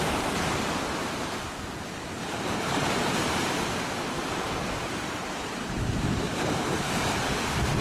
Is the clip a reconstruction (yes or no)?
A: yes